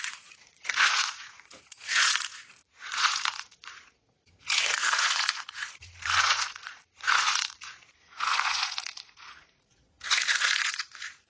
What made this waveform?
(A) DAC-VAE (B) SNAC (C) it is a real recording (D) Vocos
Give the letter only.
D